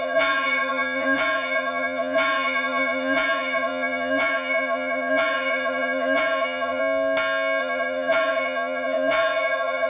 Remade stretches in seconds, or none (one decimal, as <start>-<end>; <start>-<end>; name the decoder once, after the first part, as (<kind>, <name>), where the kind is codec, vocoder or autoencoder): 0.0-6.8 (vocoder, Vocos); 7.6-9.9